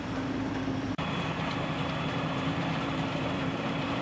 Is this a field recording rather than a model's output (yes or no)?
no